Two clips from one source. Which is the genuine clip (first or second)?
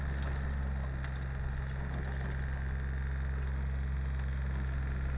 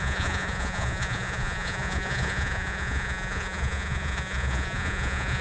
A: first